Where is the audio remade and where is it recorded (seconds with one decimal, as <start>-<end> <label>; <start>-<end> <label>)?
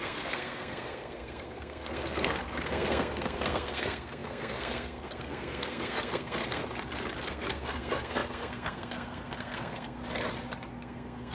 0.0-6.6 remade; 6.6-7.3 recorded; 7.3-10.0 remade; 10.0-10.7 recorded; 10.7-11.3 remade